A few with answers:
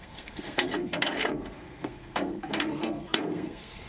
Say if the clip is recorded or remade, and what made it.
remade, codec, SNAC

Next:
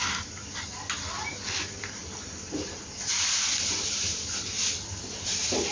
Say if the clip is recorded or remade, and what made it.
recorded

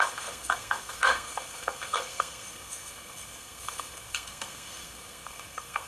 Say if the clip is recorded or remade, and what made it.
remade, codec, SNAC